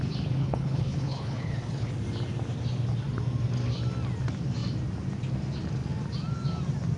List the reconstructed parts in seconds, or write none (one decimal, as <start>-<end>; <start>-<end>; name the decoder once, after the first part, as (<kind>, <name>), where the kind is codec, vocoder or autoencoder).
0.4-1.9 (codec, HILCodec)